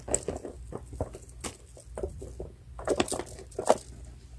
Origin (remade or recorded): recorded